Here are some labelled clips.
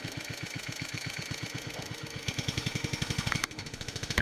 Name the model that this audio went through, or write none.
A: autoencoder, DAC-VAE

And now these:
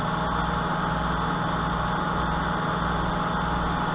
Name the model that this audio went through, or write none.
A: none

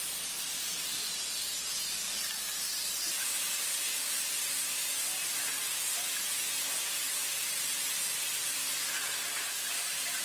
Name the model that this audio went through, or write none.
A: none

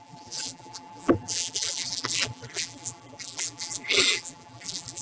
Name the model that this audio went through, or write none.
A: vocoder, BigVGAN v2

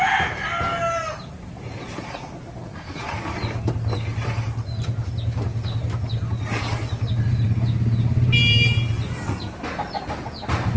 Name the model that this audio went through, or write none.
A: none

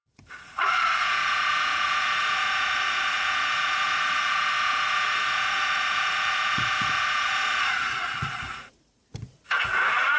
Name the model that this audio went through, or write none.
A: vocoder, Vocos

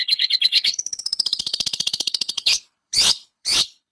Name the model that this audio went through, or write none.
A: codec, HILCodec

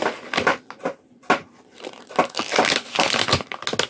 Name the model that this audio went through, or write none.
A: none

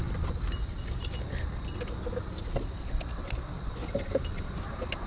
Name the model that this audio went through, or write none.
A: none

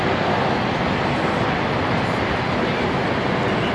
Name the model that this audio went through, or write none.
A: none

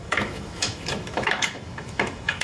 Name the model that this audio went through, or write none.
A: autoencoder, DAC-VAE